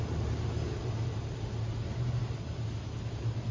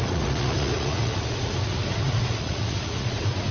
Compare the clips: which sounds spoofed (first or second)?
second